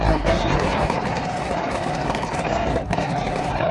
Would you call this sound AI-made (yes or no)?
yes